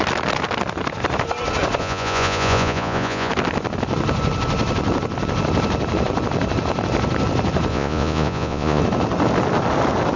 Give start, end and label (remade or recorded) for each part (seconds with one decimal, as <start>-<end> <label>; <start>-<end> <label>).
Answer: 0.0-1.8 recorded; 1.8-3.3 remade; 3.3-7.7 recorded; 7.7-8.8 remade; 8.8-10.2 recorded